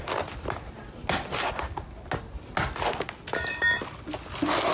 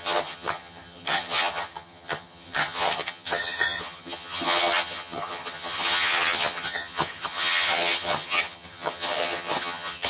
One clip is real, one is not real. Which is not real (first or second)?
second